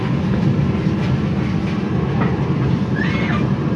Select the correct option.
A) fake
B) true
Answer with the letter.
B